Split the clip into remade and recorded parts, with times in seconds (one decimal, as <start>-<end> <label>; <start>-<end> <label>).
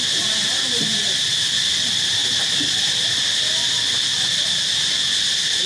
0.0-5.7 recorded